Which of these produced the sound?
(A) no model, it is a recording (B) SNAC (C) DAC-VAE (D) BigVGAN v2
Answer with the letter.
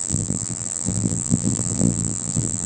D